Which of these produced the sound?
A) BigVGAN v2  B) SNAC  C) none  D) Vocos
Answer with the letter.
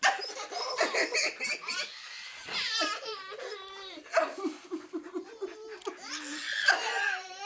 A